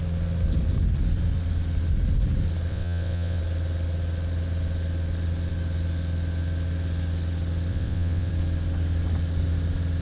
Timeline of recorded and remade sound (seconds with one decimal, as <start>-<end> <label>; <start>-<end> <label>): 0.0-2.7 recorded; 2.7-3.4 remade; 3.4-7.7 recorded; 7.7-8.3 remade; 8.3-10.0 recorded